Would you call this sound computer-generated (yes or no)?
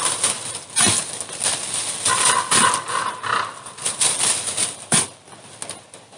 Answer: no